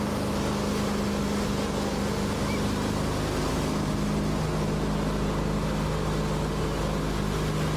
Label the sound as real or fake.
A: real